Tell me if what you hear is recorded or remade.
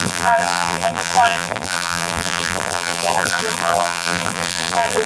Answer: remade